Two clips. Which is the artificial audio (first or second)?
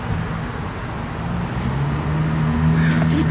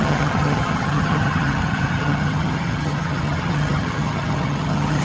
second